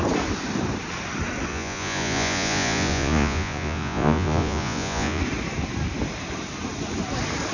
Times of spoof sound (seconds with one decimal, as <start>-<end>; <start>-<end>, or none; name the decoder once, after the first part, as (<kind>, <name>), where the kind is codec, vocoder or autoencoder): 1.5-5.2 (vocoder, Vocos)